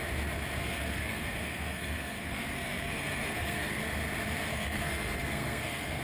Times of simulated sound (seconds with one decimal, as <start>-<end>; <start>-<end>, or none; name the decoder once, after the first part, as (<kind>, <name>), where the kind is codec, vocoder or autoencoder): 0.6-3.8 (codec, SNAC); 4.5-6.0